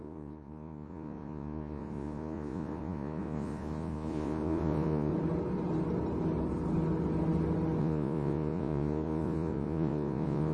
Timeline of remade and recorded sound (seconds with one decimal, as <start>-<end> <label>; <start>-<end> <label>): 0.0-5.1 remade; 5.1-7.8 recorded; 7.8-10.5 remade